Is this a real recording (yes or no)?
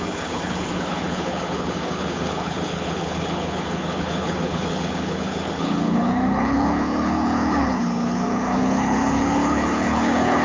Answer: no